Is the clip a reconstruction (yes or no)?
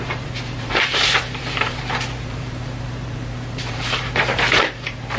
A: yes